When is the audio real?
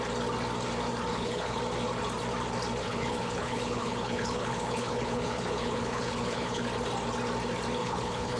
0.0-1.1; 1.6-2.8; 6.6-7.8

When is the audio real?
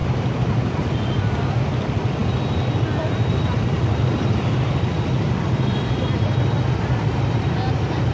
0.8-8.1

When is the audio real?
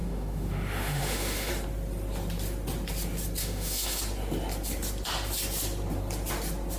1.5-3.4; 4.0-6.8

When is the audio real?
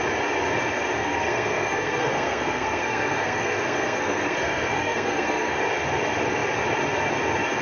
0.0-1.0; 5.6-7.6